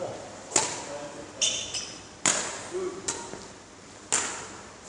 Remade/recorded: recorded